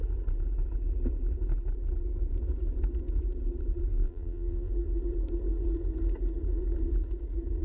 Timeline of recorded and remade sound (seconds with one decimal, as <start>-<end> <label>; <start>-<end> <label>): 0.0-3.9 recorded; 3.9-4.7 remade; 4.7-7.6 recorded